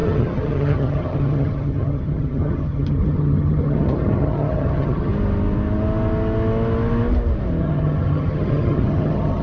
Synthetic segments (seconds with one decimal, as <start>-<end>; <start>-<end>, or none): 0.0-5.1; 7.6-9.4